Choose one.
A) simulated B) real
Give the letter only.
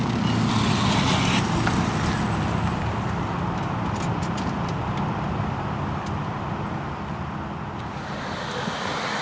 B